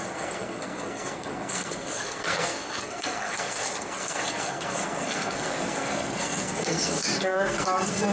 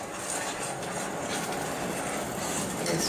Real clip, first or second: second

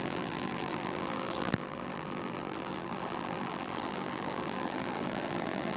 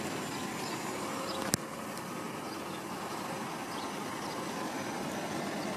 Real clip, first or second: second